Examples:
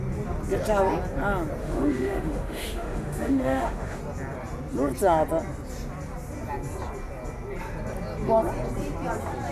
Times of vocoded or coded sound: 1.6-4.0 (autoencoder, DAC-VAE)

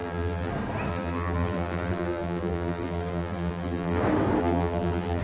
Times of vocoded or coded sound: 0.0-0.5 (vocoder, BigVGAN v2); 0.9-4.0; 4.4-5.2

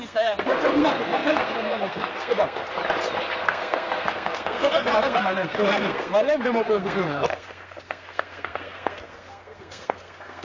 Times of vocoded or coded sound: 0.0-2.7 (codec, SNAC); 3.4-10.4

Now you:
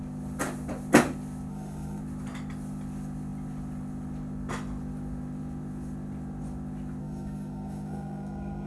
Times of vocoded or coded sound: 1.5-2.0 (codec, SNAC); 7.0-8.7

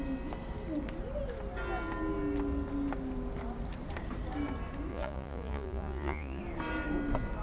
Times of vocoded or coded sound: 4.9-6.4 (vocoder, Vocos)

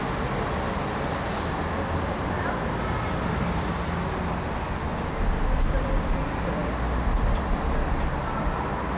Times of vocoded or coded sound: none

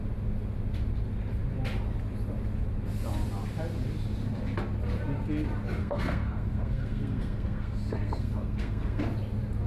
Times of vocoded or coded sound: 5.8-9.0 (codec, SNAC)